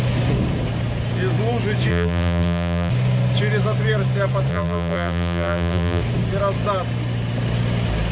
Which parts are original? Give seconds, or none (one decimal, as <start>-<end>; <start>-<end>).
0.0-1.9; 2.9-4.5; 6.0-8.1